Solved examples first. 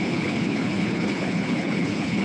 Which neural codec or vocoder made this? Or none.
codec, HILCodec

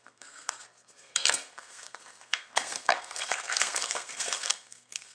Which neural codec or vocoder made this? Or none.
codec, SNAC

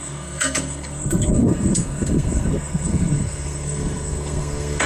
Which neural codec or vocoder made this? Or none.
codec, SNAC